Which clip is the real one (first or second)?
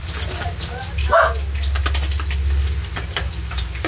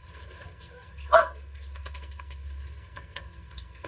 first